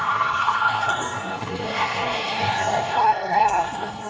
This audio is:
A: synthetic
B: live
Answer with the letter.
A